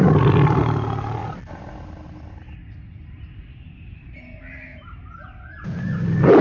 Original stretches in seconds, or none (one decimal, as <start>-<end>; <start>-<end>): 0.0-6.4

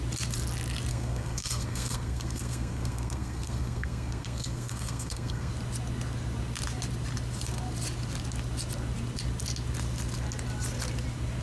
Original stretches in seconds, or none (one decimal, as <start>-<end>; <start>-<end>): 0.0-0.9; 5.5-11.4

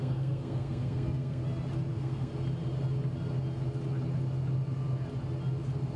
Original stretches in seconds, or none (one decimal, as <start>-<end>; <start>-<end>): 1.4-1.9; 2.3-6.0

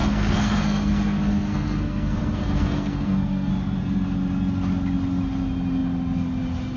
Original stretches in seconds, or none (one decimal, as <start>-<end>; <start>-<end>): 3.5-6.8